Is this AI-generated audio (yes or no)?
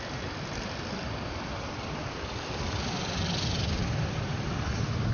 yes